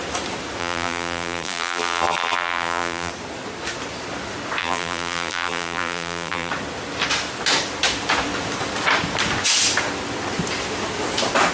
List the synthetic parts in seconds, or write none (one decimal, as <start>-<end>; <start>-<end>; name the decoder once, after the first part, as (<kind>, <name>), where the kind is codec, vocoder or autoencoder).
0.6-3.1 (vocoder, BigVGAN v2); 4.6-6.5